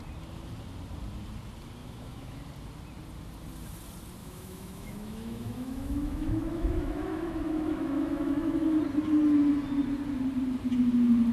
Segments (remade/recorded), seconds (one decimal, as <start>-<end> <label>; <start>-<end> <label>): 0.0-1.8 recorded; 1.8-2.4 remade; 2.4-4.2 recorded; 4.2-8.8 remade; 8.8-11.3 recorded